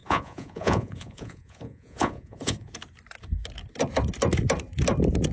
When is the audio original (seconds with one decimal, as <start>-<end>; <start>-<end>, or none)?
2.7-5.3

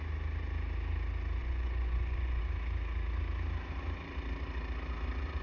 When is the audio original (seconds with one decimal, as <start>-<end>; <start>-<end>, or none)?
0.0-1.4; 2.4-5.4

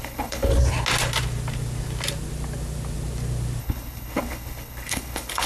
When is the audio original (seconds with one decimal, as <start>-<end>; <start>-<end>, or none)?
0.5-3.6

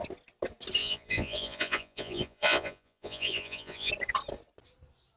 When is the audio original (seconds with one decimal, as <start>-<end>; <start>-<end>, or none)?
0.0-0.8; 3.9-5.2

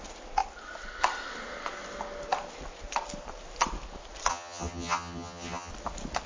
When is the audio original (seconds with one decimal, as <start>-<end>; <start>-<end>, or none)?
0.0-4.3; 5.7-6.3

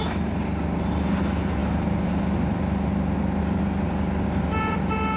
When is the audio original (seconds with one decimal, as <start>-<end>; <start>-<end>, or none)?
0.0-5.2